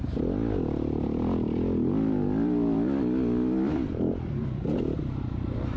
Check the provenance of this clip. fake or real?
real